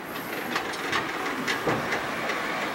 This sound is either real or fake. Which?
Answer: real